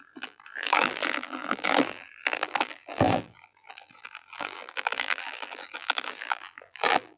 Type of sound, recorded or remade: remade